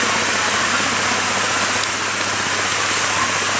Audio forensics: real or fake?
real